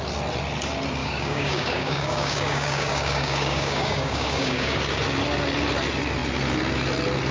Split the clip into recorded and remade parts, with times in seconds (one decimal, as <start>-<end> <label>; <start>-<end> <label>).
0.0-1.0 recorded; 1.0-4.8 remade; 4.8-7.3 recorded